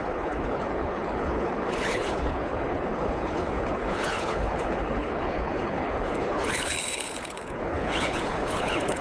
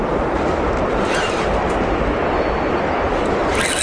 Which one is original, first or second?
second